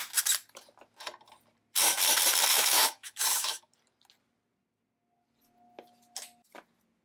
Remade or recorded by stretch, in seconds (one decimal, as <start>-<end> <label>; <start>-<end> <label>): 0.0-2.5 recorded; 2.5-3.7 remade; 3.7-7.0 recorded